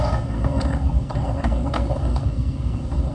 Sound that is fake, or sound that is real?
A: fake